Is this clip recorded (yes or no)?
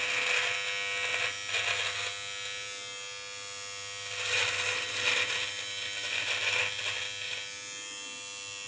yes